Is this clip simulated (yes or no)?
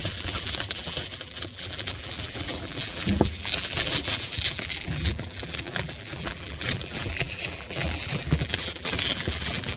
yes